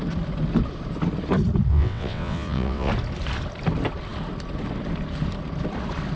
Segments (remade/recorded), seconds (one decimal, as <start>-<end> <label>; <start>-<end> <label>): 0.0-1.7 recorded; 1.7-2.9 remade; 2.9-6.2 recorded